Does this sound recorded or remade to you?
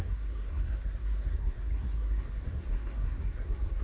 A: remade